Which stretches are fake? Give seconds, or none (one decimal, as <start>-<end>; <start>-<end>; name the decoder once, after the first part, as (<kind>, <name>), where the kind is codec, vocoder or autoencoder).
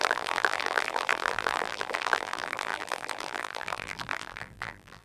0.0-5.0 (vocoder, BigVGAN v2)